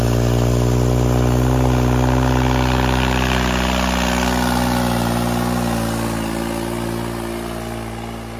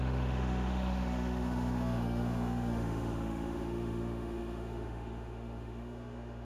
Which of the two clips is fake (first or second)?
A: second